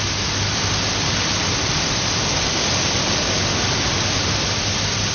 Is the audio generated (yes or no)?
no